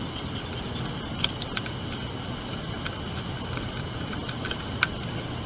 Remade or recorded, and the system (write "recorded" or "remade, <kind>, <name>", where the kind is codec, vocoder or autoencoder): recorded